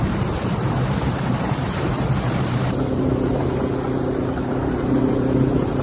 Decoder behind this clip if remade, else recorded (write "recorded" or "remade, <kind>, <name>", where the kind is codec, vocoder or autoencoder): remade, vocoder, BigVGAN v2